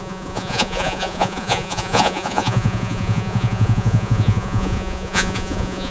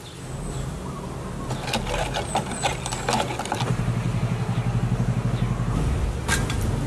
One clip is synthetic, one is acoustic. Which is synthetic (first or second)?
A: first